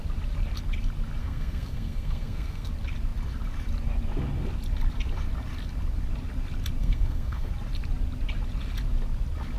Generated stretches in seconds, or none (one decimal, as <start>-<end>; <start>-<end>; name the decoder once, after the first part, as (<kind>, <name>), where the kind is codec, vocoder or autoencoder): 1.2-2.7 (codec, SNAC); 6.8-7.5